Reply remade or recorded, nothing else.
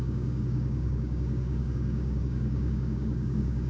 remade